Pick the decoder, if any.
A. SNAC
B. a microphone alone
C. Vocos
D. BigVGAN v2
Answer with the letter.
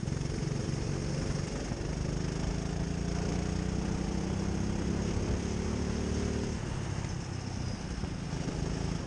B